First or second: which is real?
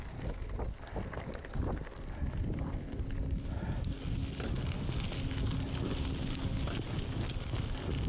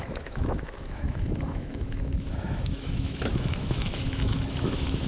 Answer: first